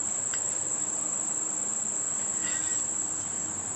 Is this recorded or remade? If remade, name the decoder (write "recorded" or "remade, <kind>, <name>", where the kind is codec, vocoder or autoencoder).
remade, vocoder, BigVGAN v2